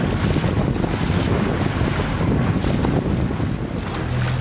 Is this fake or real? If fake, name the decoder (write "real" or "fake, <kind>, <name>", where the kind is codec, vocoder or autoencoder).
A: real